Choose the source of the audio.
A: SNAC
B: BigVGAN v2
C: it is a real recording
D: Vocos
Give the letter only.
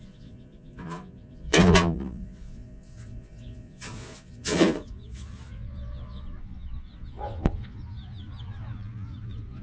D